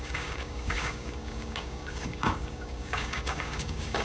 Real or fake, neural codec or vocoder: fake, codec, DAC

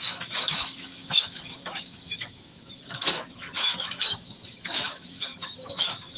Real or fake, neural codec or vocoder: fake, autoencoder, DAC-VAE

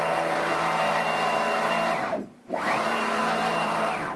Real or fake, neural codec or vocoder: fake, vocoder, BigVGAN v2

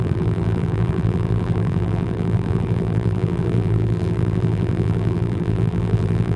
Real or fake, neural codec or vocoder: fake, vocoder, BigVGAN v2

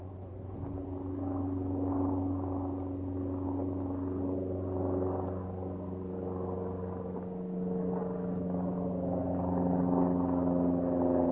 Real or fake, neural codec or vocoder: real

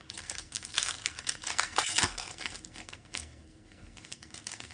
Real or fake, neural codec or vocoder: fake, codec, SNAC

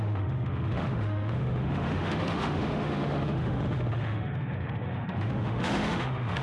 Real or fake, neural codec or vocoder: fake, autoencoder, DAC-VAE